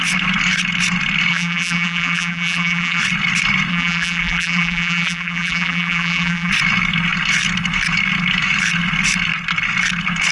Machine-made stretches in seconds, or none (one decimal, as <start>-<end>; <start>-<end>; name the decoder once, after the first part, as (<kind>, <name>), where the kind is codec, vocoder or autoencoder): 1.3-3.0 (vocoder, BigVGAN v2); 3.7-6.5